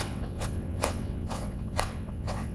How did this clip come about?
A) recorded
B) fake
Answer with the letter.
B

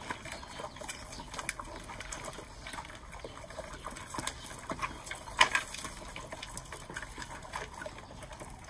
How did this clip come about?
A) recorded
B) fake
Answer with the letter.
A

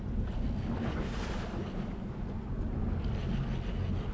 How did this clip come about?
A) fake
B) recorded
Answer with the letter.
B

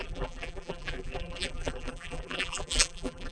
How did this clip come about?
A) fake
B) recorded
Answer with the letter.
A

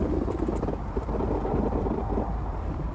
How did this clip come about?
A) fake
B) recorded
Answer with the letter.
A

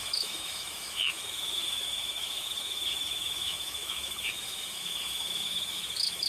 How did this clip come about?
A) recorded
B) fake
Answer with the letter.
B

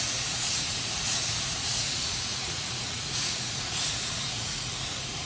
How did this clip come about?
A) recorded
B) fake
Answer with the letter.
B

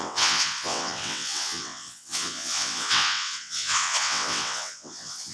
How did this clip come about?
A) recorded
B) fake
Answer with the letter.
B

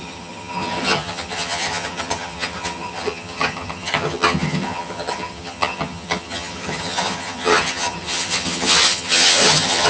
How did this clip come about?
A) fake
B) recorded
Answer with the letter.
A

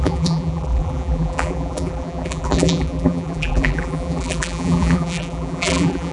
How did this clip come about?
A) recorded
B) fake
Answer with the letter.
B